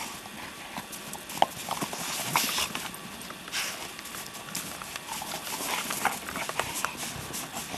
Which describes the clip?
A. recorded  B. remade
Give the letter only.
A